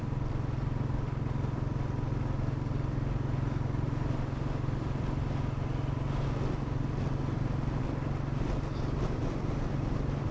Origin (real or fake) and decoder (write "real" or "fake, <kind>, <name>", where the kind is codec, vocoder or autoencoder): real